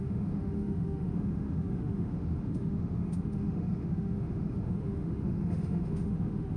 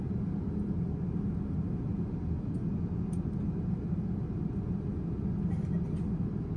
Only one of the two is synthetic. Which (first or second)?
first